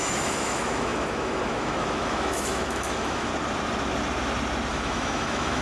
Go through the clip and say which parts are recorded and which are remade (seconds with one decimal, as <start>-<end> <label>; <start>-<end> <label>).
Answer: 0.0-3.3 remade; 3.3-4.7 recorded; 4.7-5.6 remade